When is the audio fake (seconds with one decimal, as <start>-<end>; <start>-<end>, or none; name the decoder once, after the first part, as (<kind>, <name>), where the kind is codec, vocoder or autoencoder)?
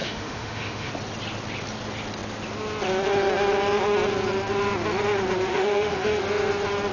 0.0-0.9 (autoencoder, DAC-VAE); 5.5-6.2